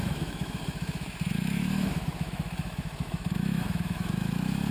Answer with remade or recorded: remade